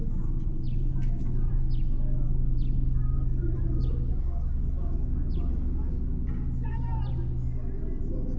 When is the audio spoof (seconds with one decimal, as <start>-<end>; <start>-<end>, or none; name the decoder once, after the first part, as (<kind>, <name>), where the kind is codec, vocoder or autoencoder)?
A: 0.0-1.6 (vocoder, BigVGAN v2); 3.3-3.9